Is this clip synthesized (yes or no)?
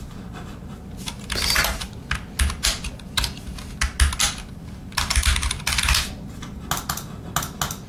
no